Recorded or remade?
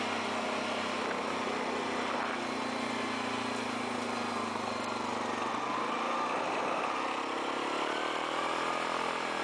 recorded